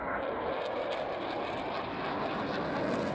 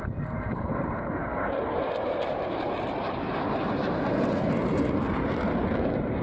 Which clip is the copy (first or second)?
second